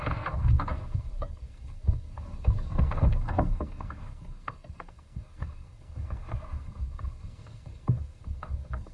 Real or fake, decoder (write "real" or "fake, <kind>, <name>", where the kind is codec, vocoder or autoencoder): fake, codec, SNAC